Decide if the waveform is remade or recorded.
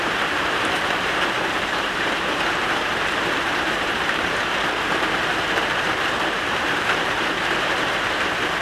remade